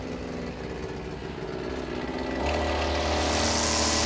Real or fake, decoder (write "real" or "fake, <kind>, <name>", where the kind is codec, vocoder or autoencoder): real